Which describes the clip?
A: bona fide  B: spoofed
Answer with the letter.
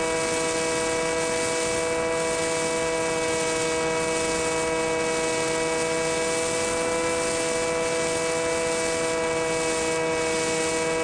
A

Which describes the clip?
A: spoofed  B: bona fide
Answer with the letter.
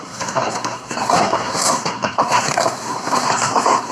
A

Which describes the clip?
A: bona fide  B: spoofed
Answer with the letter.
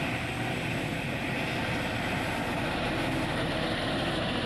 A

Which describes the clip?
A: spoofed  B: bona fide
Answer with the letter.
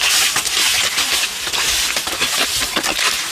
B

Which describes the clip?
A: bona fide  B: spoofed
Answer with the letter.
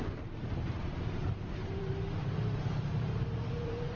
B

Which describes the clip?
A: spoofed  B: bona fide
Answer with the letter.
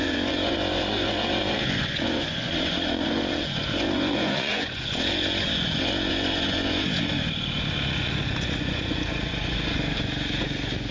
A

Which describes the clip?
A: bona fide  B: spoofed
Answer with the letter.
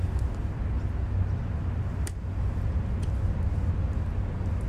A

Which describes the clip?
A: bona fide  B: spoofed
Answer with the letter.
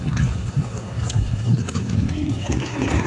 B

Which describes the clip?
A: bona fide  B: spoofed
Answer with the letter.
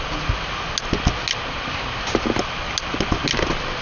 A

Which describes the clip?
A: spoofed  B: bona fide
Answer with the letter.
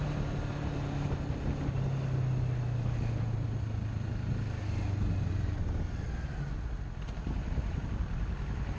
B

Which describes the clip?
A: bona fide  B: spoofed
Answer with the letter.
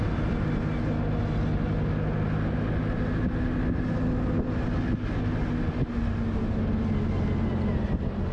A